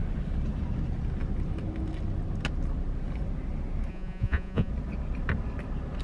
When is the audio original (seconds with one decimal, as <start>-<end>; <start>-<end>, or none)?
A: 0.0-3.9; 4.7-6.0